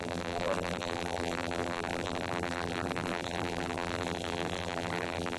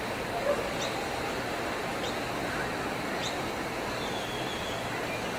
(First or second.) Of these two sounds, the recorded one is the second